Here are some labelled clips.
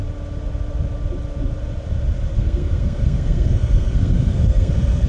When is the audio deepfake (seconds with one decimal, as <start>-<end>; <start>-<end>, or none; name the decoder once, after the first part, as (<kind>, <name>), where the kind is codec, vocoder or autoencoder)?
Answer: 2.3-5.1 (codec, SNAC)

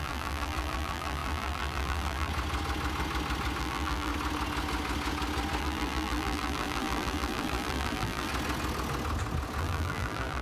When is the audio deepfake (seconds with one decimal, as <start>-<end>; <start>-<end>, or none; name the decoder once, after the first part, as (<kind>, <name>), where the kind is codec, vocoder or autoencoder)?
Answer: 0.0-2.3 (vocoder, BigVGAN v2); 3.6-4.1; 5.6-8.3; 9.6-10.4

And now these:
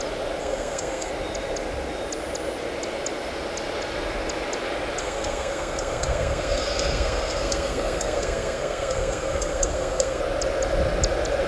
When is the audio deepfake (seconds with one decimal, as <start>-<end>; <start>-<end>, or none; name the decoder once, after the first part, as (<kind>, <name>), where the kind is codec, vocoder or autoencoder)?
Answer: 0.4-1.1 (codec, SNAC); 5.0-10.2

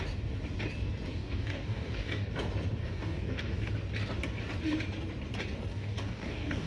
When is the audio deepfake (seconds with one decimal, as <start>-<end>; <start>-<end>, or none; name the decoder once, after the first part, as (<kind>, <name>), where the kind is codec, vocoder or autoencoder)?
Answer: 1.1-2.3 (codec, DAC); 2.8-3.7; 5.7-6.7

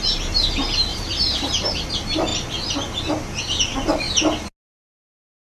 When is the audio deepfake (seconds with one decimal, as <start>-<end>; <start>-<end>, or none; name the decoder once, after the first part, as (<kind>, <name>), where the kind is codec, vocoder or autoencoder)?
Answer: 0.9-1.9 (vocoder, BigVGAN v2)

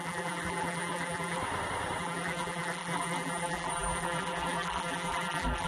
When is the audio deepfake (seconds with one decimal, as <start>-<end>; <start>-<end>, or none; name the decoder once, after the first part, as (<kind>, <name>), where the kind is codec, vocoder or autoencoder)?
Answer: 0.0-1.4 (vocoder, BigVGAN v2); 2.0-5.7

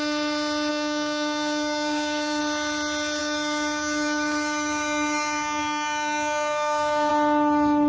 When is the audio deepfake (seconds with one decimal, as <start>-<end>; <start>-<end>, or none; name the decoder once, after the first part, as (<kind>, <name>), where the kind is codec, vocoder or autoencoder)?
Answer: 0.7-2.4 (codec, DAC); 3.2-7.1